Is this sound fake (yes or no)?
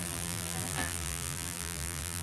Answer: yes